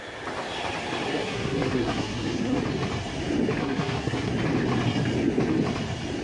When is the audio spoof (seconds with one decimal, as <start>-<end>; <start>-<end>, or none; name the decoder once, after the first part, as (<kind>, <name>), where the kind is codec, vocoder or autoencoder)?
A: 1.1-2.6 (codec, SNAC); 3.6-4.3